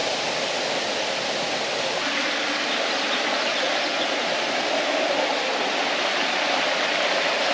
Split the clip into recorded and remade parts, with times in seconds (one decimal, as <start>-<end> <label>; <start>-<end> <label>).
0.0-7.5 recorded